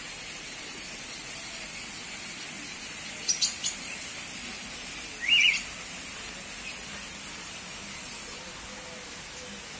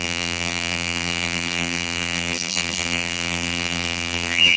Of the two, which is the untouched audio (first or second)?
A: first